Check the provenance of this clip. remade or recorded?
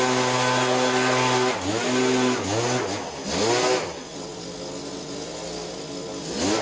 recorded